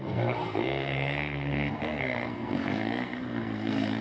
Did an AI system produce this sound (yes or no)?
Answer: yes